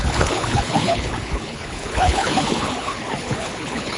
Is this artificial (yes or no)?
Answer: yes